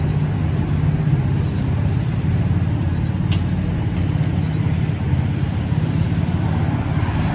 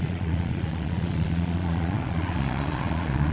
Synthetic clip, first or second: second